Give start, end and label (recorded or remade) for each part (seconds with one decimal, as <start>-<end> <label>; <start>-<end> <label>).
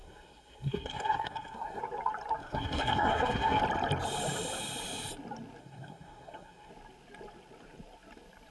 0.0-1.8 remade; 1.8-2.4 recorded; 2.4-3.6 remade; 3.6-5.6 recorded; 5.6-6.7 remade; 6.7-8.5 recorded